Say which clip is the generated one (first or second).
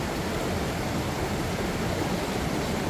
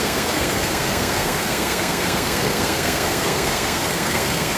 second